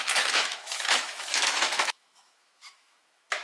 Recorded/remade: remade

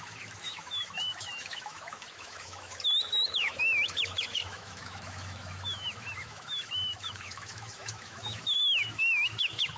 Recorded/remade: remade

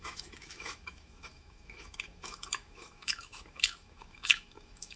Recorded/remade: remade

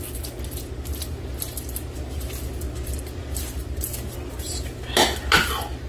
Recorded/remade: recorded